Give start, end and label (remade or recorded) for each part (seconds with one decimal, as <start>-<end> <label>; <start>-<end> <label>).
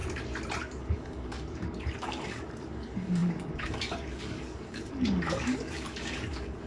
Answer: 0.0-0.6 recorded; 0.6-6.7 remade